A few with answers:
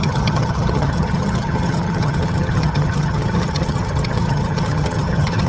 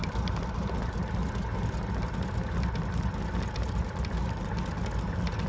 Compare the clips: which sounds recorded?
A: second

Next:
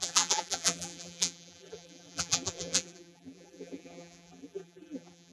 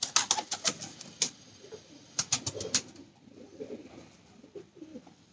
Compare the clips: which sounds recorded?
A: second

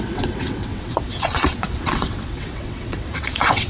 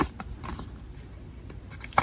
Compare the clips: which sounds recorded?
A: second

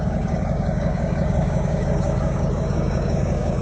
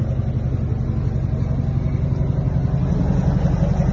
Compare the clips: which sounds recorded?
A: second